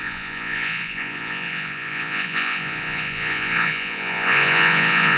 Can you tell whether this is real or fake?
fake